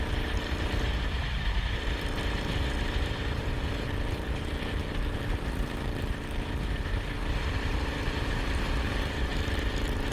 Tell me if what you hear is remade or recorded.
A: remade